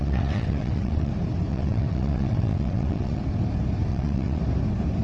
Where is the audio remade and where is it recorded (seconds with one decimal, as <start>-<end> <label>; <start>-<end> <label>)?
0.0-1.1 remade; 1.1-1.5 recorded; 1.5-3.2 remade; 3.2-3.9 recorded; 3.9-4.4 remade; 4.4-5.0 recorded